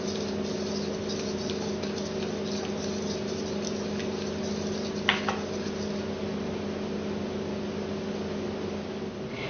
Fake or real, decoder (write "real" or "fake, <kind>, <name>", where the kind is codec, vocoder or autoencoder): real